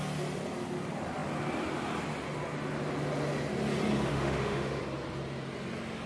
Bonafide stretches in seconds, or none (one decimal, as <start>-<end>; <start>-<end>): 0.0-4.1; 4.8-6.1